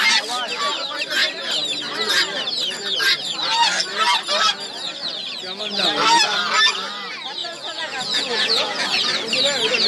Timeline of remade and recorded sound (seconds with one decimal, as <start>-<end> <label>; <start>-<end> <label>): 0.0-7.4 recorded; 7.4-9.0 remade; 9.0-9.9 recorded